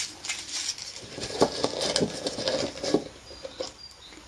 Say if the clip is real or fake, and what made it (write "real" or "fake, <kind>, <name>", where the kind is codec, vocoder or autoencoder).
fake, vocoder, BigVGAN v2